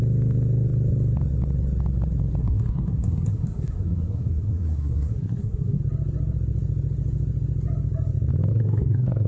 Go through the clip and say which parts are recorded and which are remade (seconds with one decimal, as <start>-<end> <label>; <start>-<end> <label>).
0.0-2.4 recorded; 2.4-5.8 remade; 5.8-8.5 recorded; 8.5-9.3 remade